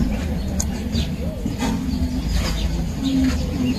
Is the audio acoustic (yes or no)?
yes